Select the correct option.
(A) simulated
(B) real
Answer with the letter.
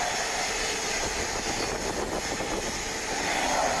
B